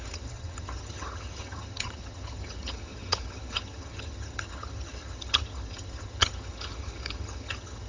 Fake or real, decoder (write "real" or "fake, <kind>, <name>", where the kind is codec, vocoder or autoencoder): fake, vocoder, HiFi-GAN